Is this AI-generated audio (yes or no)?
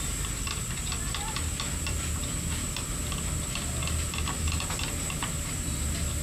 no